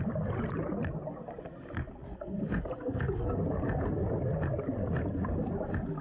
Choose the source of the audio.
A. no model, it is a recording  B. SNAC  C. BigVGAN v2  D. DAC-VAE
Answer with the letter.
A